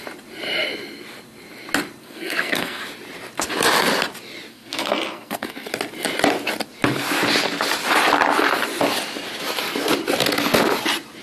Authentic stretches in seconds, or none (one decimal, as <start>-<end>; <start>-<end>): 0.0-2.0; 2.8-4.5; 5.7-11.2